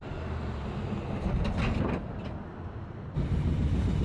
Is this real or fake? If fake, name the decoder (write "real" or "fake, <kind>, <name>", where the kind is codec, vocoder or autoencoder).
real